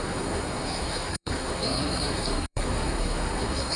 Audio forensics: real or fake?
fake